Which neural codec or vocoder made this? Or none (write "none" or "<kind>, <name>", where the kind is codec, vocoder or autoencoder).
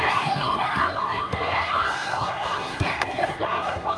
codec, SNAC